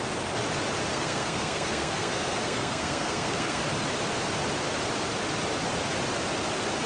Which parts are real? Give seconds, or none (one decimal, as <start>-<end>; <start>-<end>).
0.0-0.9; 3.6-6.9